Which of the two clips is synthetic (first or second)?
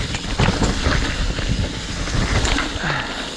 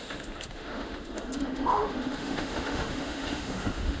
second